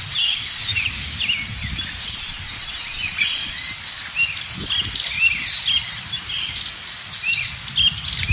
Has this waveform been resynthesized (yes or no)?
yes